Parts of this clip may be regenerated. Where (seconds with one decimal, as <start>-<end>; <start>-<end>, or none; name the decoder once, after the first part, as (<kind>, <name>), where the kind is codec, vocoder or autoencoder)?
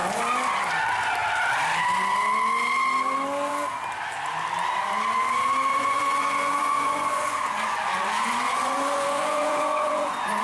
5.7-10.4 (vocoder, Vocos)